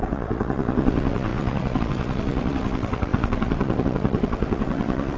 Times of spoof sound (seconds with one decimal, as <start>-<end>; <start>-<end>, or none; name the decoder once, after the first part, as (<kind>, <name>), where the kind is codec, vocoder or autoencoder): 0.0-5.2 (vocoder, WaveNeXt)

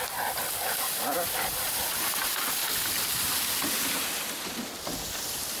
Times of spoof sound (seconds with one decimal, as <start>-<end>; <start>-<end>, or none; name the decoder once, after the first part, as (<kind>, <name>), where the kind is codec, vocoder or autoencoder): none